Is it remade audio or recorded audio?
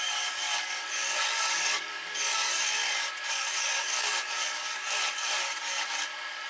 remade